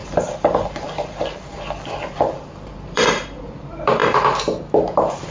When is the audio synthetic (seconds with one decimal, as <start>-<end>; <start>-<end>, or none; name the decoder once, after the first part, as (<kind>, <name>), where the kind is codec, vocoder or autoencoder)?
0.0-4.0 (vocoder, BigVGAN v2)